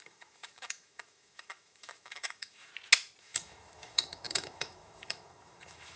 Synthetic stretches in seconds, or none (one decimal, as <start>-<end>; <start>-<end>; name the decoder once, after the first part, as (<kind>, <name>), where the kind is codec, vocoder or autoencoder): 0.0-2.7 (autoencoder, DAC-VAE); 3.2-6.0